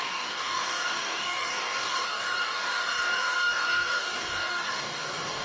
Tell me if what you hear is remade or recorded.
remade